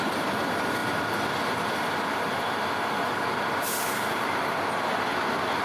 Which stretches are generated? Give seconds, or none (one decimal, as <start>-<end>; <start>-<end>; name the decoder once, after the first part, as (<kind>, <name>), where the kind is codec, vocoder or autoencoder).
none